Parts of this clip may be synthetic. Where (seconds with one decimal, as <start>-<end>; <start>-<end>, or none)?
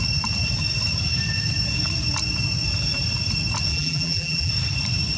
3.7-4.5